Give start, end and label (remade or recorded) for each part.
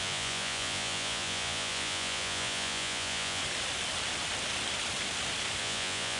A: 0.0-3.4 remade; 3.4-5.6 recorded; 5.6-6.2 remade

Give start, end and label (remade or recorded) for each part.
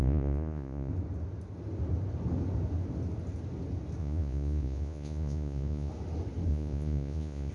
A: 0.0-0.9 remade; 0.9-4.0 recorded; 4.0-5.9 remade; 5.9-6.5 recorded; 6.5-7.5 remade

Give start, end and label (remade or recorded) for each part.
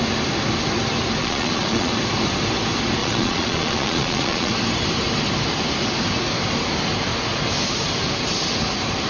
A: 0.0-1.2 recorded; 1.2-1.9 remade; 1.9-3.0 recorded; 3.0-4.5 remade; 4.5-9.1 recorded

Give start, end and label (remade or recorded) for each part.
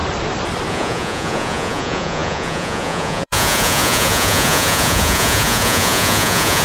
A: 0.0-0.7 recorded; 0.7-6.6 remade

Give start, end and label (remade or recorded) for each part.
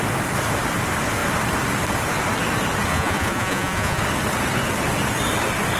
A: 0.0-2.9 recorded; 2.9-4.0 remade; 4.0-5.8 recorded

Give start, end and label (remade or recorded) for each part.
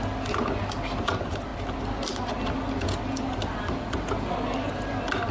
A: 0.0-5.3 recorded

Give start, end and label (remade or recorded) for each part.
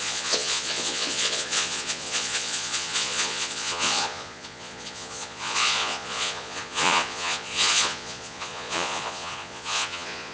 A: 0.0-10.3 remade